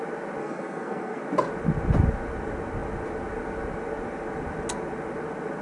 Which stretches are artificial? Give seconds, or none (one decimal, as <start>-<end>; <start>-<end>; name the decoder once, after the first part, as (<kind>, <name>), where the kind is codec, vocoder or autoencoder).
0.4-1.2 (codec, SNAC)